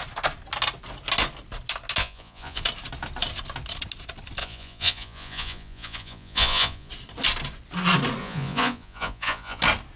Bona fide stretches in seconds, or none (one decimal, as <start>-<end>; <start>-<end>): 0.0-2.0; 2.6-4.4; 6.9-8.2; 9.6-10.0